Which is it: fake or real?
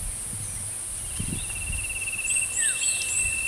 real